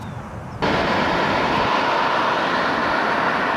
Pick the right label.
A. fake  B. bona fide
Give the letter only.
B